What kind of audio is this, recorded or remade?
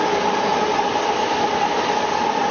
recorded